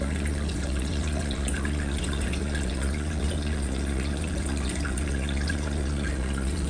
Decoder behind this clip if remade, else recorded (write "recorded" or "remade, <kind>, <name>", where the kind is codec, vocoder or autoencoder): remade, vocoder, Vocos